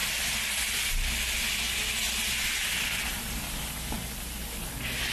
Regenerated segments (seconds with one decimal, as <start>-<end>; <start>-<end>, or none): none